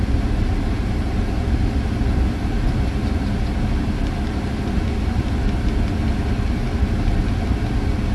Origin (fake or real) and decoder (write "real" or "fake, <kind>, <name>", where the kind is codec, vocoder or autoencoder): real